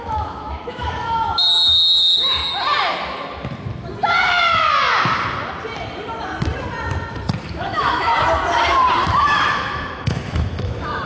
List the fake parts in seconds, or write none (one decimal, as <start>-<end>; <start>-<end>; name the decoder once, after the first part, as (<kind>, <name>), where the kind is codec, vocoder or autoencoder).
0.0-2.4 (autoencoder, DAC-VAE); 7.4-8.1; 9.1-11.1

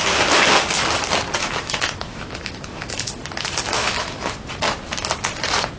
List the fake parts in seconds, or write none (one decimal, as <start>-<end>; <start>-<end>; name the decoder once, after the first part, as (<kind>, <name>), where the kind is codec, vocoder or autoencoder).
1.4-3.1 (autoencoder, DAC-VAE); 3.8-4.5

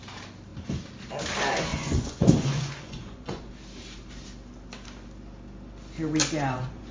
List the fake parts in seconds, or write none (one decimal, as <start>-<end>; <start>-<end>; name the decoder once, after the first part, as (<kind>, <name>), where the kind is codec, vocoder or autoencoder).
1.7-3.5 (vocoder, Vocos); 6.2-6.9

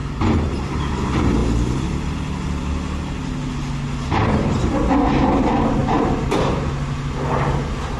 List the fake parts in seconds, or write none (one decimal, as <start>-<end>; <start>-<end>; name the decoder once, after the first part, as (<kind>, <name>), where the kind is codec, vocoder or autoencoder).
5.8-6.7 (vocoder, BigVGAN v2)

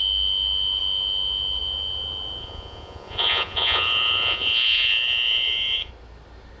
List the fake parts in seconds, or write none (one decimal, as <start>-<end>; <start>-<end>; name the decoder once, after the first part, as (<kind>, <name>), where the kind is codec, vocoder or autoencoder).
2.4-5.9 (vocoder, Vocos)

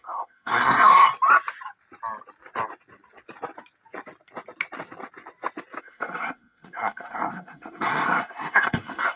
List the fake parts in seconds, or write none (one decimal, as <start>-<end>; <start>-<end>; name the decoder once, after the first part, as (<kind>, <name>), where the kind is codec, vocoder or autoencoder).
0.0-1.1 (codec, SNAC); 5.8-9.2

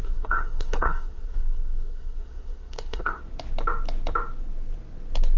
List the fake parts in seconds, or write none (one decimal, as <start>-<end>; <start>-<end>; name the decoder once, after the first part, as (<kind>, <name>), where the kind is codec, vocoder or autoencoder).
0.0-3.2 (codec, SNAC)